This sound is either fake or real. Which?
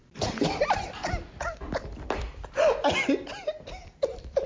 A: real